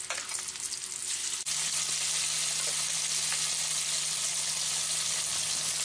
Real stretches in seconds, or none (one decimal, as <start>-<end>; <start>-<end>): 0.0-5.8